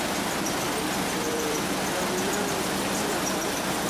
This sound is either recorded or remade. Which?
remade